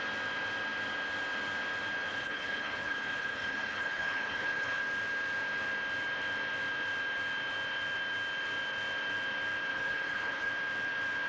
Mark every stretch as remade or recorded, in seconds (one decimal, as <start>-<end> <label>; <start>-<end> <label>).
0.0-2.1 recorded; 2.1-4.8 remade; 4.8-9.7 recorded; 9.7-10.5 remade; 10.5-11.3 recorded